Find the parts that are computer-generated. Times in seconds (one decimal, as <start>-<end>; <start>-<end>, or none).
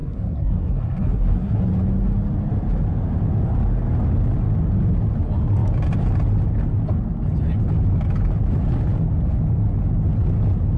0.0-1.6